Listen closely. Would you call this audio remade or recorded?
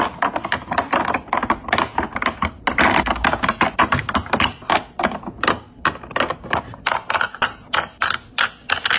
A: recorded